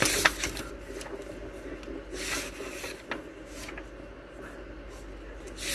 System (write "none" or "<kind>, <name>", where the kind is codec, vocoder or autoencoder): none